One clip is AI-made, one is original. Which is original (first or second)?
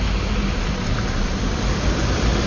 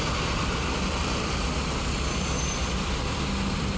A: second